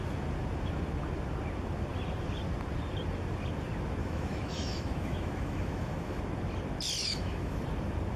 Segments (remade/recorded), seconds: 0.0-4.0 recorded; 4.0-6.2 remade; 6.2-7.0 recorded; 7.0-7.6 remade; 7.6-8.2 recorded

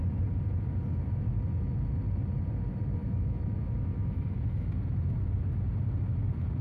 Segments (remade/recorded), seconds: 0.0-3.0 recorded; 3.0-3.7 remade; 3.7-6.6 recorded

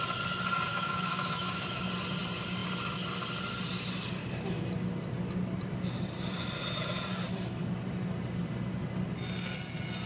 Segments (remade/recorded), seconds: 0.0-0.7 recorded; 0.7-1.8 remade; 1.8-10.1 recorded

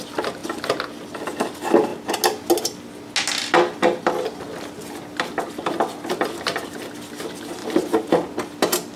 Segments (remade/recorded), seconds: 0.0-9.0 recorded